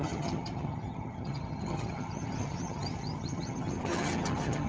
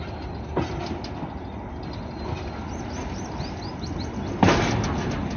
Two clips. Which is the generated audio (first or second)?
first